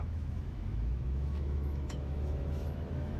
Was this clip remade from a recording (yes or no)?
yes